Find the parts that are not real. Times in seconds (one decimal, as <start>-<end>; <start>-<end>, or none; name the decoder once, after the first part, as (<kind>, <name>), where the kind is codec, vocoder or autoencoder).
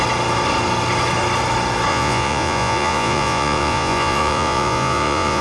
1.9-5.4 (vocoder, Vocos)